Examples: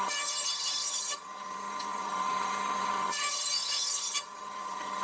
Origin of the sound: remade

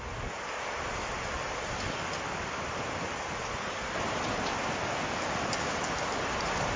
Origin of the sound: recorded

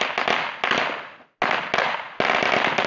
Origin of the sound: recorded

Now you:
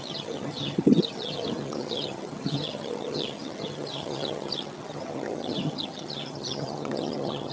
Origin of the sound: remade